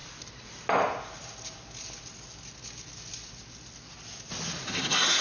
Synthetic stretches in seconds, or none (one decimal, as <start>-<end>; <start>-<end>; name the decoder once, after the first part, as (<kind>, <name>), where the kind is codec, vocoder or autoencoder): none